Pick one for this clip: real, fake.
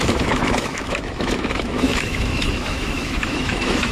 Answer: fake